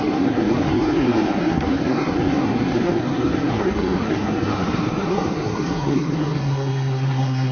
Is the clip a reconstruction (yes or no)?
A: yes